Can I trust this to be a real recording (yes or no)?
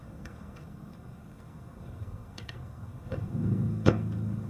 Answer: no